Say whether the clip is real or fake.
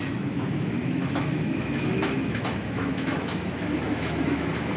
fake